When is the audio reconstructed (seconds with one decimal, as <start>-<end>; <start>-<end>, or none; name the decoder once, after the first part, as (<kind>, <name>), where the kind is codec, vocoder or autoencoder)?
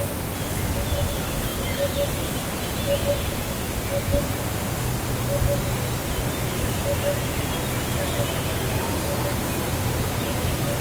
none